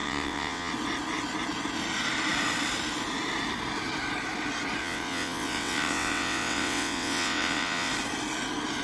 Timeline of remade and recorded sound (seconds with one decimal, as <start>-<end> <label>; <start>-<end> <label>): 0.0-0.7 remade; 0.7-4.8 recorded; 4.8-7.9 remade; 7.9-8.8 recorded